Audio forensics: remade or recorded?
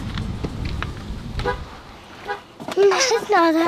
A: recorded